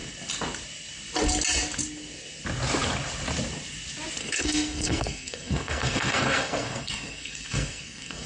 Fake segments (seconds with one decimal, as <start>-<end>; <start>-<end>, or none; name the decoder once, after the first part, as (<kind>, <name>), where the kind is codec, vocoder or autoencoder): 4.2-8.3 (codec, SNAC)